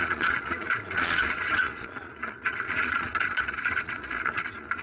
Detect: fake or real fake